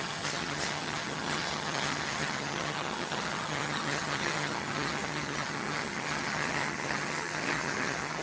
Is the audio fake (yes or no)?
yes